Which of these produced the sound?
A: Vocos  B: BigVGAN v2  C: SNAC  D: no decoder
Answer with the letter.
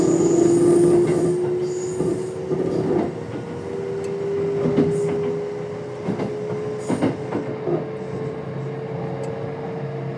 D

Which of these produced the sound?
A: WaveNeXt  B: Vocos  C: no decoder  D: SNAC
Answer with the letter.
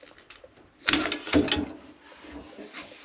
C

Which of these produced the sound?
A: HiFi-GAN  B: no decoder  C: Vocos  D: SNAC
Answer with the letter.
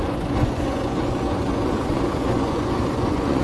C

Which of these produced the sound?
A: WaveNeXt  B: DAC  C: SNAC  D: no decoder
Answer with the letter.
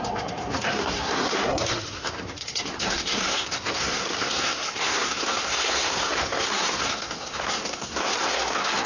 C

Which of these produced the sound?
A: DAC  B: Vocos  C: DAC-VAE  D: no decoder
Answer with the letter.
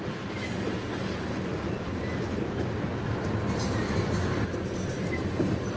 D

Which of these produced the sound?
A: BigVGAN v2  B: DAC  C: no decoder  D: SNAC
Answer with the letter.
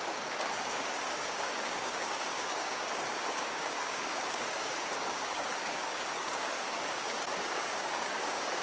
B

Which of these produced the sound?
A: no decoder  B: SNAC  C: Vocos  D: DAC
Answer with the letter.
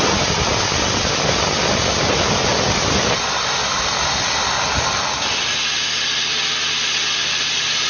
A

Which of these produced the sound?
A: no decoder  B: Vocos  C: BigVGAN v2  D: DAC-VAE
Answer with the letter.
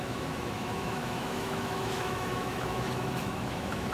D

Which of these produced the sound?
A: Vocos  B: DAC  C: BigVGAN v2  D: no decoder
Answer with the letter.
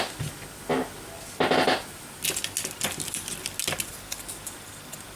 D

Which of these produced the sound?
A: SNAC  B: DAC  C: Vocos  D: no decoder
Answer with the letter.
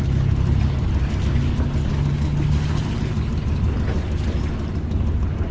D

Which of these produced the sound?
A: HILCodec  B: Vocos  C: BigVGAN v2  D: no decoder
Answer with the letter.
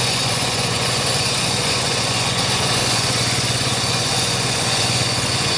B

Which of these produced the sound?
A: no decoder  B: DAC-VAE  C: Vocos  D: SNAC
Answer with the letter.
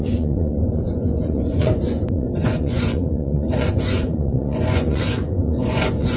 C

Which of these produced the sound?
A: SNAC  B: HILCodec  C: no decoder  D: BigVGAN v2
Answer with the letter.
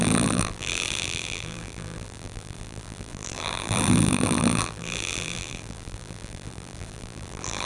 D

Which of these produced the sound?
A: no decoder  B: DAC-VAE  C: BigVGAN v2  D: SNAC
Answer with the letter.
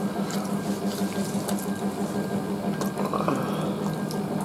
A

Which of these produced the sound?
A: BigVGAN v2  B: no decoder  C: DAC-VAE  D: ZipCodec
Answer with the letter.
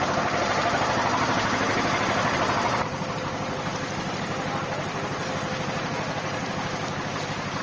A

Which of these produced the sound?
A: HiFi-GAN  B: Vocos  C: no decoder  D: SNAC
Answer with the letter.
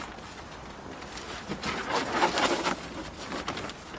C